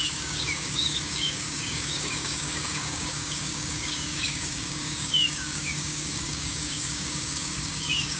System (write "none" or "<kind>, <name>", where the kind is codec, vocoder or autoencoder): codec, DAC